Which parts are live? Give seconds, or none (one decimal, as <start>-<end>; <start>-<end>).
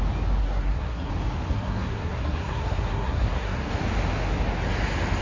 0.0-0.4; 1.1-1.5; 3.7-5.2